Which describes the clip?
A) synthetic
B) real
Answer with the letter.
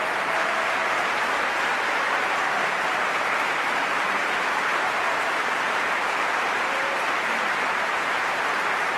A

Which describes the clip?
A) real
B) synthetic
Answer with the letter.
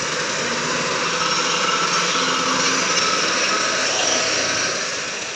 A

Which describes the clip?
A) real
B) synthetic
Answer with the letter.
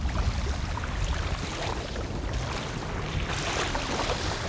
A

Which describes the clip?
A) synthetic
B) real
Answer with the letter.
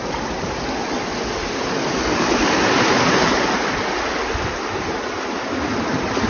B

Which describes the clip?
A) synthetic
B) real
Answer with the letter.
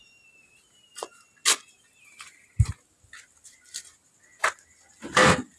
B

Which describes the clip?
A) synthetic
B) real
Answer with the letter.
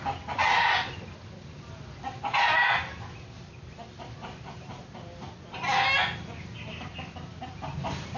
B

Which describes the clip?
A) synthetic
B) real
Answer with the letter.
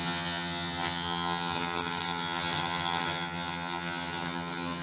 A